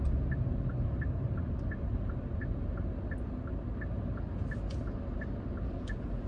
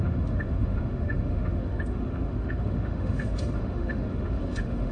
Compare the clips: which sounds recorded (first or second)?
first